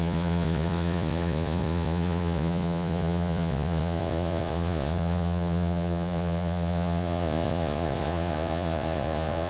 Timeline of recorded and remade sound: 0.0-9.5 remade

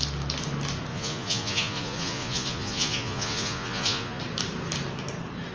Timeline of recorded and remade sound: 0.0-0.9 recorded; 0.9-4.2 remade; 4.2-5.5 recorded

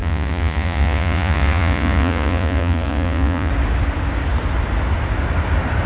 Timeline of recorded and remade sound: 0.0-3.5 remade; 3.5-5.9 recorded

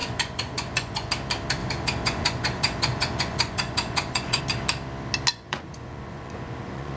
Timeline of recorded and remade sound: 0.0-1.1 remade; 1.1-1.6 recorded; 1.6-4.4 remade; 4.4-5.3 recorded; 5.3-7.0 remade

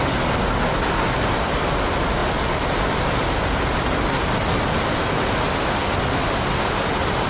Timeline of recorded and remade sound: 0.0-7.3 recorded

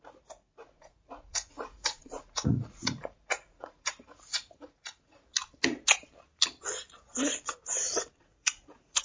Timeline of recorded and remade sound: 0.0-5.3 remade; 5.3-8.2 recorded; 8.2-9.0 remade

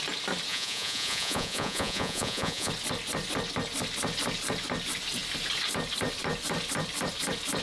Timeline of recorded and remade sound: 0.0-0.5 recorded; 0.5-2.7 remade; 2.7-7.6 recorded

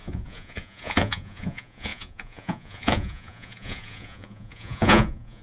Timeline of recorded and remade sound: 0.0-5.4 remade